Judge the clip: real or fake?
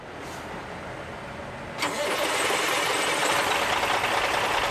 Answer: real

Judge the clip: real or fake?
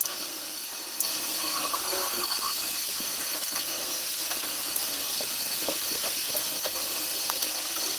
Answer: fake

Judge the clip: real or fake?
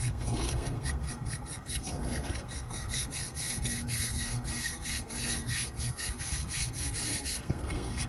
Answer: fake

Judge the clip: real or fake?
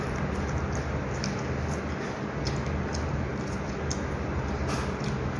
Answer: real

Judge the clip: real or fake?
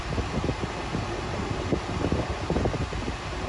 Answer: real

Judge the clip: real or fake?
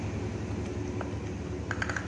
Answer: real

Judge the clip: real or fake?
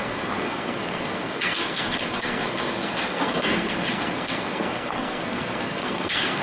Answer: fake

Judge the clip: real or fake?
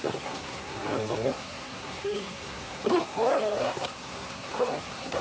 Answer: fake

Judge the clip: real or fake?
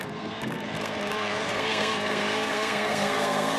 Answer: fake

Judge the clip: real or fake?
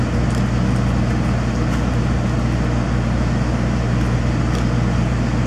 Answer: real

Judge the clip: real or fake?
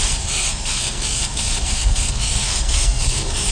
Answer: fake